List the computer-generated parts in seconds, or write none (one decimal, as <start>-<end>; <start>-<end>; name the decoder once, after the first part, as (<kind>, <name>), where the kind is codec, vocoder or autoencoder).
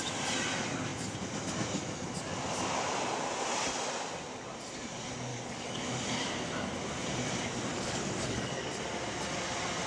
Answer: 5.3-5.8 (codec, DAC); 7.7-8.7